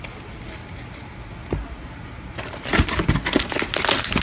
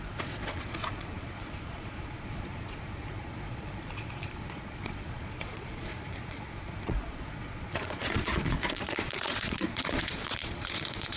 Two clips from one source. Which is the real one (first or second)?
first